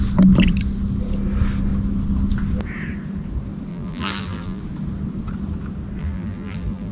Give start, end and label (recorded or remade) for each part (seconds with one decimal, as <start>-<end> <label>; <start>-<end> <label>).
0.0-3.7 recorded; 3.7-4.6 remade; 4.6-6.0 recorded; 6.0-6.9 remade